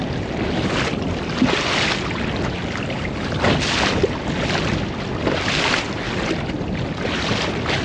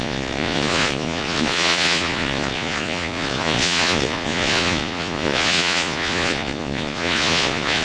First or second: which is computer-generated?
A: second